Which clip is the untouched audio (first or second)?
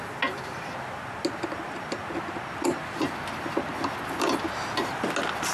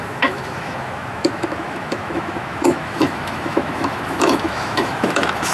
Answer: first